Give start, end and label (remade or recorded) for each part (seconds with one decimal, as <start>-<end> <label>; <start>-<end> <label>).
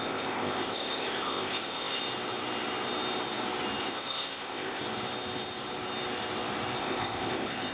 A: 0.0-2.0 remade; 2.0-3.8 recorded; 3.8-4.8 remade; 4.8-6.8 recorded; 6.8-7.7 remade